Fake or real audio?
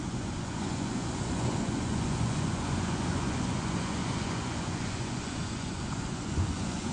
fake